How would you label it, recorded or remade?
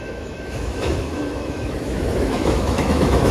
remade